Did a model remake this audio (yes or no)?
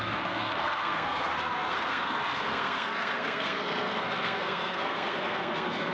yes